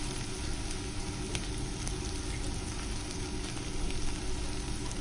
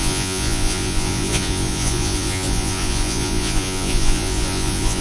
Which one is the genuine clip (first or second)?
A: first